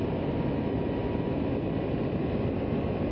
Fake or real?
real